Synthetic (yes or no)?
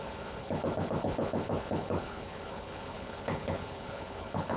yes